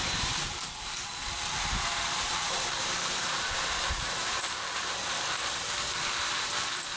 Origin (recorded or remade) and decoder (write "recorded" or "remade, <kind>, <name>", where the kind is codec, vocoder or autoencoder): remade, vocoder, BigVGAN v2